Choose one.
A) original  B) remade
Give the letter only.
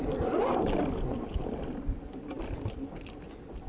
A